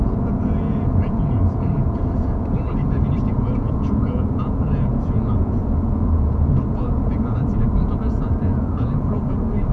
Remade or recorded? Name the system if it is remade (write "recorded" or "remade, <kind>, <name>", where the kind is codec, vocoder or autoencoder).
remade, vocoder, Vocos